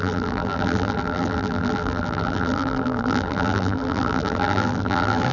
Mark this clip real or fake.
fake